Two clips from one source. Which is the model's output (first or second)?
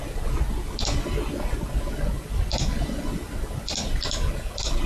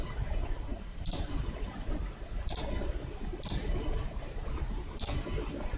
second